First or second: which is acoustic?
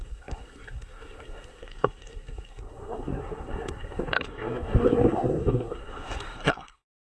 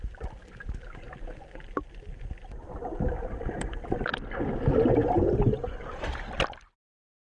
second